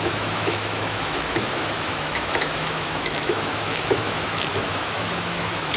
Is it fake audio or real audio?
fake